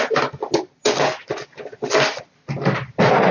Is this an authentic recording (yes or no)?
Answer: yes